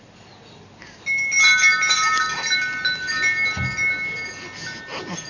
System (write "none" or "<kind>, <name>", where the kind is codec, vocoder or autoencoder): none